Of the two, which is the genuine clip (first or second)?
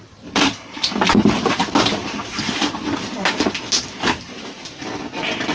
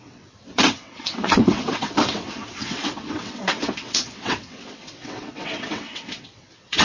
first